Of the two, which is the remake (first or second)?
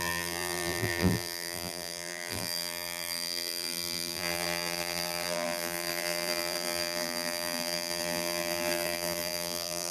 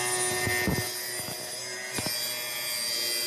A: first